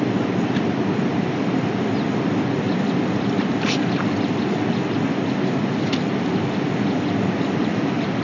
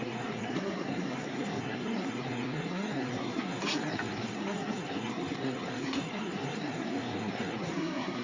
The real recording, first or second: first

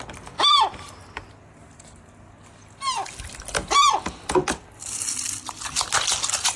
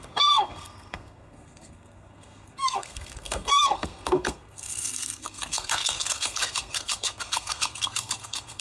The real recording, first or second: first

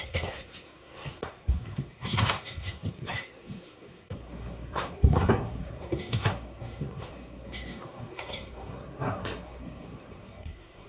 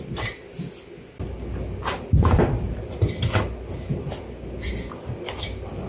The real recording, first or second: second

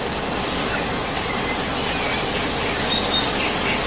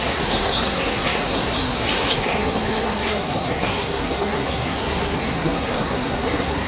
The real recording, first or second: first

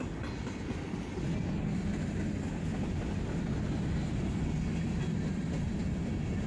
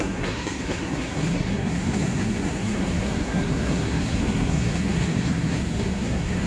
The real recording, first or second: first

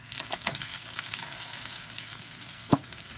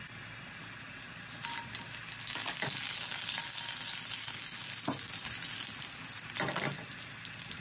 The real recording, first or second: second